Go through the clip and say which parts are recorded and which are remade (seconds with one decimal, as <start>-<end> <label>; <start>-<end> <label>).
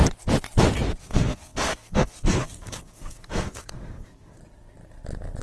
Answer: 0.0-1.0 recorded; 1.0-4.4 remade; 4.4-5.4 recorded